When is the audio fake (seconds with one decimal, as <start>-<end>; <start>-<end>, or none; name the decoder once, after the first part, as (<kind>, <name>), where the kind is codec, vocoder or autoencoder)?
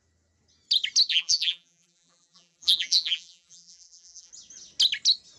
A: 1.1-4.3 (vocoder, BigVGAN v2)